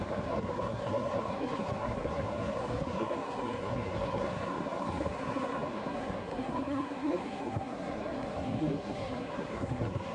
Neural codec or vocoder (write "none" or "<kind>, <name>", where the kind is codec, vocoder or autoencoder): codec, SNAC